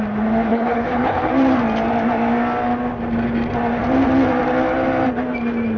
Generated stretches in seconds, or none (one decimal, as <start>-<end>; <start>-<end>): 0.5-1.3